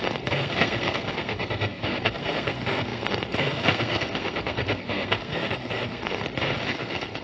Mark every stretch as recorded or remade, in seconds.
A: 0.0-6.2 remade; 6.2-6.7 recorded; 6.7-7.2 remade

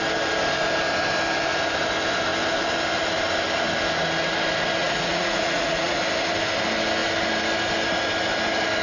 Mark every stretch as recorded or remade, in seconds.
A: 0.0-4.8 recorded; 4.8-6.0 remade; 6.0-8.8 recorded

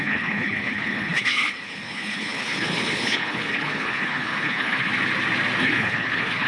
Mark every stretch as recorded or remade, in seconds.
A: 0.0-4.9 remade; 4.9-5.6 recorded; 5.6-6.5 remade

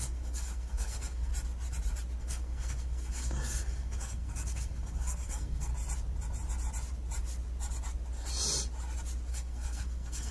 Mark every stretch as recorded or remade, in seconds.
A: 0.0-1.3 remade; 1.3-2.2 recorded; 2.2-5.7 remade; 5.7-9.3 recorded; 9.3-10.3 remade

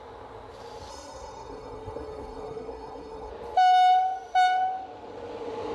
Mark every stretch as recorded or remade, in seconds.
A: 0.0-0.9 recorded; 0.9-3.3 remade; 3.3-5.7 recorded

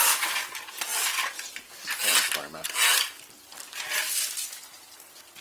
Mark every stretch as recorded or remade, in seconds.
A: 0.0-5.4 recorded

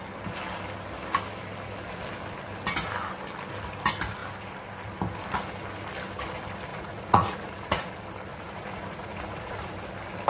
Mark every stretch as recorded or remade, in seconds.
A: 0.0-6.7 recorded; 6.7-7.9 remade; 7.9-8.3 recorded; 8.3-9.8 remade; 9.8-10.3 recorded

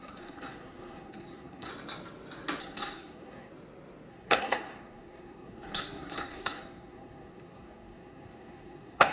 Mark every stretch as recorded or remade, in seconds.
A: 0.0-1.7 remade; 1.7-2.6 recorded; 2.6-3.5 remade; 3.5-4.1 recorded; 4.1-9.1 remade